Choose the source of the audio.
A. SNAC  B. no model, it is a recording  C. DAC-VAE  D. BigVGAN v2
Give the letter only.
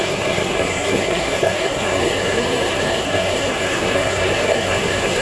A